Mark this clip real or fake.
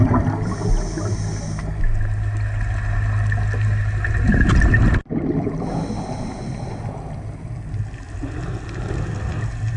real